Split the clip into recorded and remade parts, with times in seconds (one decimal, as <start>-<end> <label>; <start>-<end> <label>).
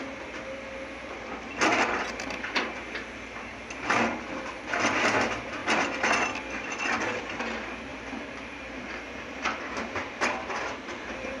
0.0-1.7 recorded; 1.7-4.0 remade; 4.0-7.9 recorded; 7.9-11.4 remade